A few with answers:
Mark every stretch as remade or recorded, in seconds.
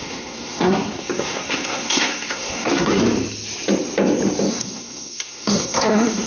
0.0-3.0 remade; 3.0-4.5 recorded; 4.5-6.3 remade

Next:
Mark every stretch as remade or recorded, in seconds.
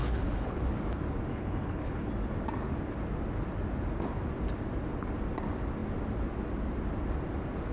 0.0-0.6 remade; 0.6-1.3 recorded; 1.3-2.1 remade; 2.1-7.7 recorded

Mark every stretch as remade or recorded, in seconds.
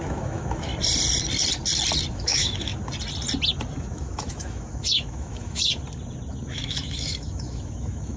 0.0-0.7 remade; 0.7-2.1 recorded; 2.1-2.7 remade; 2.7-3.8 recorded; 3.8-5.7 remade; 5.7-6.5 recorded; 6.5-8.2 remade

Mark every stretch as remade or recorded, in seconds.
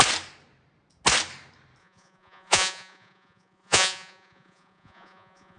0.0-1.8 recorded; 1.8-5.6 remade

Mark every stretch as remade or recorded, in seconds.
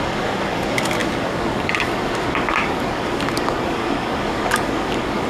0.0-5.3 remade